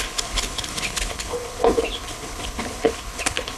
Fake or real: fake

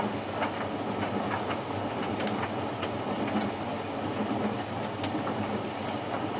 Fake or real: real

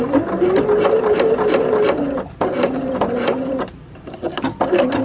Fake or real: real